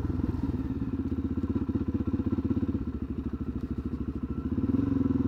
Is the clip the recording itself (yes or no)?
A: yes